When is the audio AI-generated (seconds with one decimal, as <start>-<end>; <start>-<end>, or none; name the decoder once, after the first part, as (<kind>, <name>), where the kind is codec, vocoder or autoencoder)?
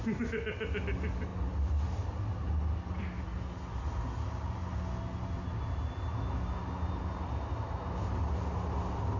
none